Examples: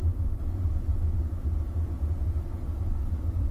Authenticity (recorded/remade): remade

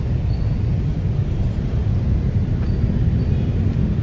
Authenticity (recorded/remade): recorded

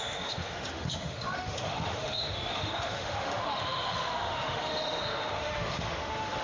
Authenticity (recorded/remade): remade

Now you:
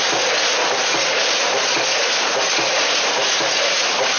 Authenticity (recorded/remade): recorded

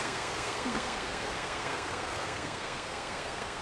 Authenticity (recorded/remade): remade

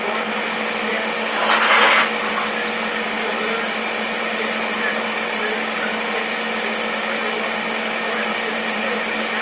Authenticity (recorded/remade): recorded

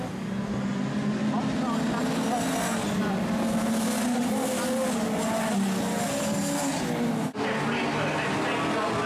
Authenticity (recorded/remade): recorded